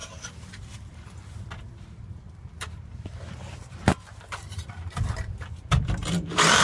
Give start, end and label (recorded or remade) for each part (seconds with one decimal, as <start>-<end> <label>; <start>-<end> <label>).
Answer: 0.0-6.6 remade